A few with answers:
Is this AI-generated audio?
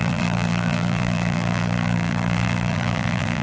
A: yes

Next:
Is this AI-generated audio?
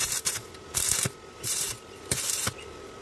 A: yes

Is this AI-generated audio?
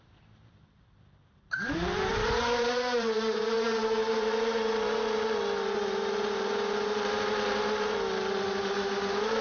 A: yes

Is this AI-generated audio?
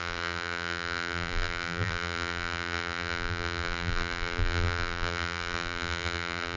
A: yes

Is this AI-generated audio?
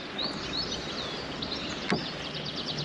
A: no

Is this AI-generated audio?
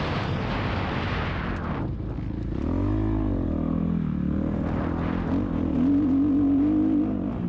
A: no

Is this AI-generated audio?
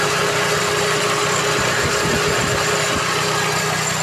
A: no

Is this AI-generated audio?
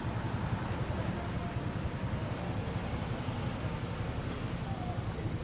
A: no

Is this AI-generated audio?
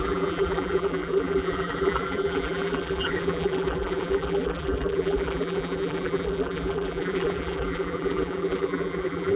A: yes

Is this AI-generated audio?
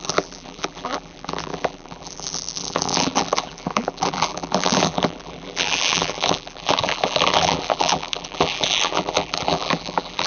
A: yes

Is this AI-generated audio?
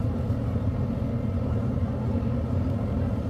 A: yes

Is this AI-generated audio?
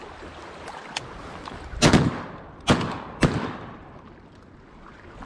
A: no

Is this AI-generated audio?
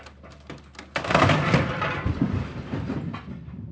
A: yes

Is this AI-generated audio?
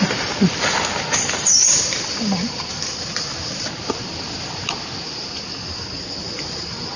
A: no